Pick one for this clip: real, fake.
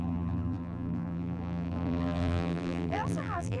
fake